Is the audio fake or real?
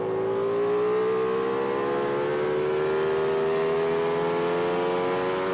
real